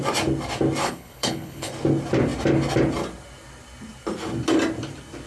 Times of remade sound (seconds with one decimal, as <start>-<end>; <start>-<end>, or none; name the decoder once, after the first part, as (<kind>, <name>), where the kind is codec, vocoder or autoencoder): 0.8-1.7 (codec, HILCodec)